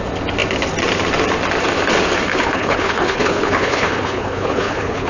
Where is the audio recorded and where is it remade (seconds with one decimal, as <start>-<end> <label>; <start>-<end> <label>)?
0.0-2.3 recorded; 2.3-5.1 remade